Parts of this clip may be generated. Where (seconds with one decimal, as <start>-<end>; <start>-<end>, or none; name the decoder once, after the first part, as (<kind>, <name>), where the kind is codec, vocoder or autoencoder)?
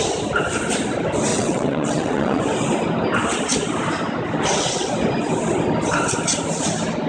1.3-2.4 (vocoder, WaveNeXt)